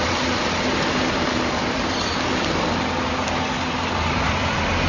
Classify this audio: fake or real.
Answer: real